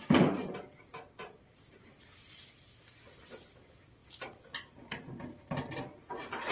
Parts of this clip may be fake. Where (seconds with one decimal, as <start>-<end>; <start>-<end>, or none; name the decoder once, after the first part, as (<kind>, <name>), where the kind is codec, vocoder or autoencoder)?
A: none